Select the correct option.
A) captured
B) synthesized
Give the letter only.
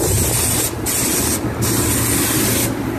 A